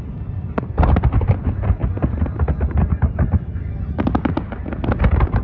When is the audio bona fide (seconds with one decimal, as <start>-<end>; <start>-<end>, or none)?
0.0-5.4